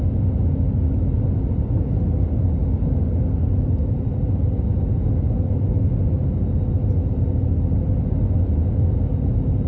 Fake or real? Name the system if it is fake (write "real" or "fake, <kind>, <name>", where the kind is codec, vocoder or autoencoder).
real